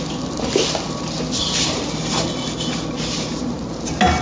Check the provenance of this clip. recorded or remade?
recorded